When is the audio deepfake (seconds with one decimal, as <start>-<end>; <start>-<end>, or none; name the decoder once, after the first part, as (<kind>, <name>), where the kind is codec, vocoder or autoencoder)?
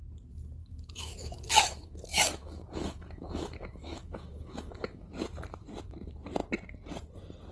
0.6-5.1 (autoencoder, DAC-VAE)